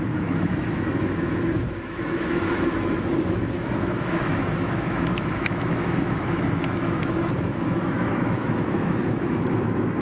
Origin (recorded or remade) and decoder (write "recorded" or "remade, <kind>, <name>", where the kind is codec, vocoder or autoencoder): remade, autoencoder, DAC-VAE